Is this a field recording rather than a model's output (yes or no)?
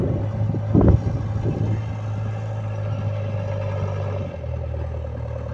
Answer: yes